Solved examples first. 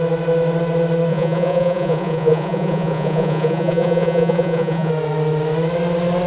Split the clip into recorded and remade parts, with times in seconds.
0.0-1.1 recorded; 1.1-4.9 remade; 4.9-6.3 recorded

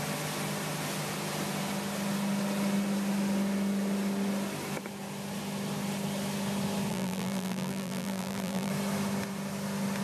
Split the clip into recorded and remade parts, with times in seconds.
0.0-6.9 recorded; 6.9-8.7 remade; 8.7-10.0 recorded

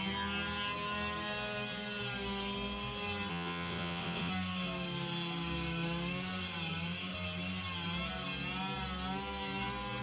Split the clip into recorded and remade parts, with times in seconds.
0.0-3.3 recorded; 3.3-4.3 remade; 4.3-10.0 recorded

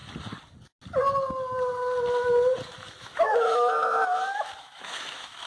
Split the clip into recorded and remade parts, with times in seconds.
0.0-3.0 recorded; 3.0-5.5 remade

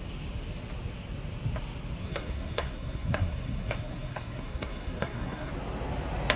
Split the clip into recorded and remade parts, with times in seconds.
0.0-2.0 recorded; 2.0-5.5 remade; 5.5-6.4 recorded